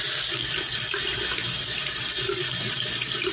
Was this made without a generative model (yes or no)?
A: yes